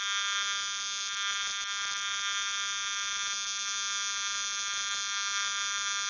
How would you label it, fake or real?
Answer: real